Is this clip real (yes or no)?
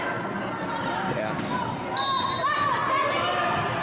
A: yes